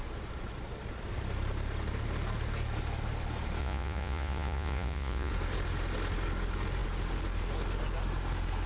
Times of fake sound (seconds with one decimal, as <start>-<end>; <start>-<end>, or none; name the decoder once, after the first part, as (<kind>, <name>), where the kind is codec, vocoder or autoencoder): 3.6-5.3 (vocoder, Vocos)